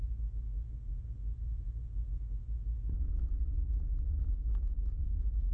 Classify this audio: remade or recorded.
recorded